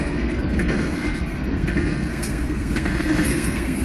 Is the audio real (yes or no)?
no